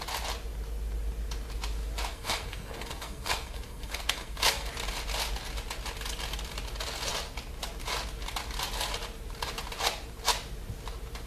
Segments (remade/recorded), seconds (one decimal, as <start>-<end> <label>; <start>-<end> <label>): 0.0-2.1 recorded; 2.1-4.7 remade; 4.7-11.3 recorded